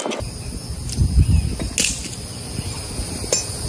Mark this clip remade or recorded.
recorded